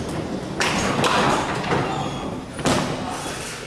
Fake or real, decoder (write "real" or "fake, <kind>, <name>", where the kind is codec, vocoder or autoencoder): real